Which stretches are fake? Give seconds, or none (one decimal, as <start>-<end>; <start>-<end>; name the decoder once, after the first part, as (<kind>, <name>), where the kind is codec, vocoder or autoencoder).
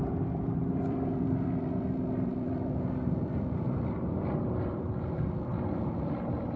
0.0-6.6 (vocoder, BigVGAN v2)